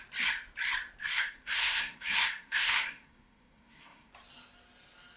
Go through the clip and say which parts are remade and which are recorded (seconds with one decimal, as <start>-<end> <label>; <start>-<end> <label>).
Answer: 0.0-1.0 recorded; 1.0-4.1 remade; 4.1-5.2 recorded